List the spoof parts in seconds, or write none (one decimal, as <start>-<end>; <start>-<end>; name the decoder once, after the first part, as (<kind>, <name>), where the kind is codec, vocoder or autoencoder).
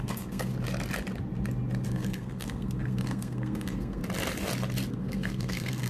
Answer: 0.0-0.5 (codec, SNAC); 1.9-4.0; 4.9-5.9